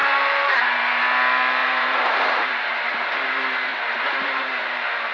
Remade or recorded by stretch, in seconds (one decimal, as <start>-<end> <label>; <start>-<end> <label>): 0.0-1.0 remade; 1.0-1.6 recorded; 1.6-2.8 remade; 2.8-3.7 recorded; 3.7-5.1 remade